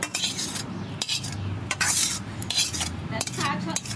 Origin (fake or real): real